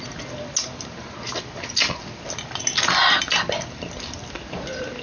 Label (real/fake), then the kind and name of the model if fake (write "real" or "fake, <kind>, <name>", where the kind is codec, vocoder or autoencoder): real